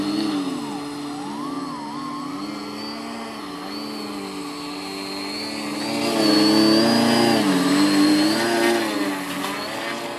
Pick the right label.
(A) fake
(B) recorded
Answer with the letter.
B